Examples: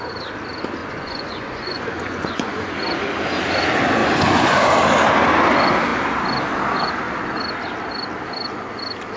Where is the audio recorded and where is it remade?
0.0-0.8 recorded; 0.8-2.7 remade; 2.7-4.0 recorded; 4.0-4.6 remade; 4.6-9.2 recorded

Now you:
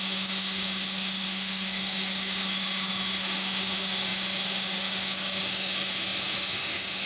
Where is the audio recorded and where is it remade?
0.0-7.1 remade

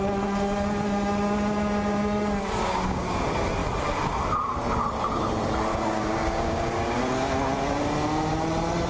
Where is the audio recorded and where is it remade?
0.0-2.6 recorded; 2.6-3.2 remade; 3.2-5.7 recorded; 5.7-7.0 remade; 7.0-8.9 recorded

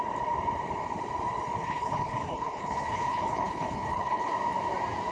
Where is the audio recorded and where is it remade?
0.0-1.6 recorded; 1.6-4.3 remade; 4.3-5.1 recorded

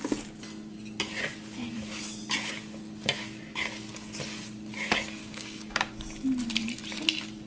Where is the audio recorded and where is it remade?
0.0-5.2 recorded; 5.2-5.9 remade; 5.9-7.5 recorded

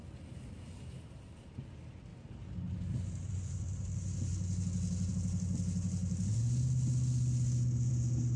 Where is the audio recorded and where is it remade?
0.0-8.4 recorded

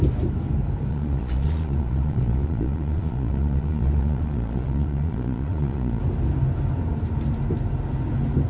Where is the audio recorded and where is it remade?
0.0-0.9 recorded; 0.9-6.0 remade; 6.0-8.5 recorded